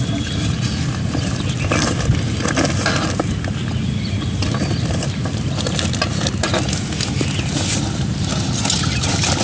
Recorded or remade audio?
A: recorded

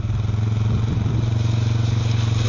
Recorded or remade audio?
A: recorded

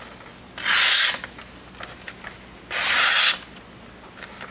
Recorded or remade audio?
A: recorded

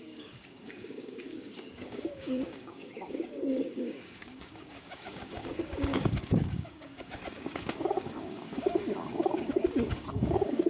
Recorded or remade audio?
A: remade